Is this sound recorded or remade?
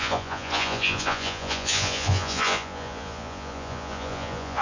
remade